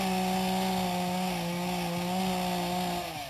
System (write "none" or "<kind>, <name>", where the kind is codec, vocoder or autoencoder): none